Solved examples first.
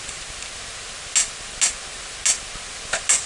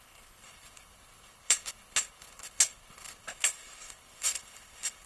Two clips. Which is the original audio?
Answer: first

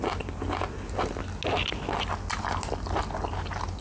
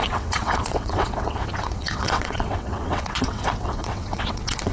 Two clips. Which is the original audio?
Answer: first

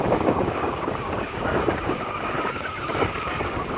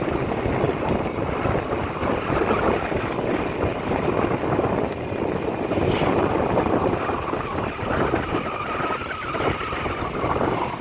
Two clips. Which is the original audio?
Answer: second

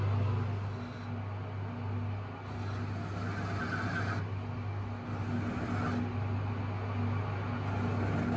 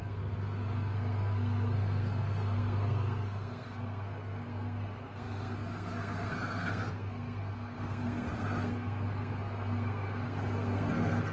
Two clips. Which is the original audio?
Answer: first